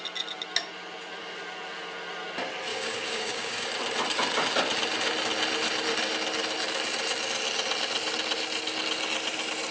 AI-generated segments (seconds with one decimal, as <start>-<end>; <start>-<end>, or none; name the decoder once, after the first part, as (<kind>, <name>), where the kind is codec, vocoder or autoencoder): 2.7-3.7 (codec, DAC)